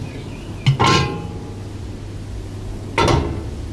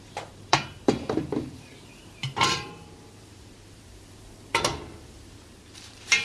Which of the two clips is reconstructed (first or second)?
second